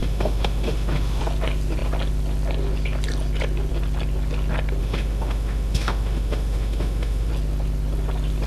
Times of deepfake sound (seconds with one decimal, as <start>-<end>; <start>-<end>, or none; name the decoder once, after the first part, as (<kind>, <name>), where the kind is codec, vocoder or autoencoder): 0.0-1.2 (autoencoder, DAC-VAE); 4.8-7.3